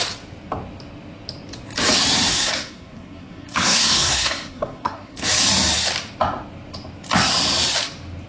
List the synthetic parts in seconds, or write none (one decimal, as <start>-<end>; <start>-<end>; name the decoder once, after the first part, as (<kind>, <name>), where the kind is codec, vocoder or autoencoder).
2.3-5.2 (codec, SNAC)

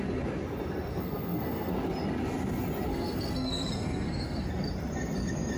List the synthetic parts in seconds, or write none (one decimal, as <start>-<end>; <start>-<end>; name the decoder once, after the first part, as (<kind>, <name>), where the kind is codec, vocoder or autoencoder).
0.9-1.7 (codec, SNAC); 2.9-4.5

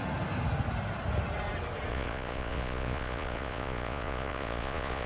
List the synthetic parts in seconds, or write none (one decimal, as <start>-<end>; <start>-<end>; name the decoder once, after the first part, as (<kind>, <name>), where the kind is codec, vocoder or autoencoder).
1.9-5.1 (vocoder, Vocos)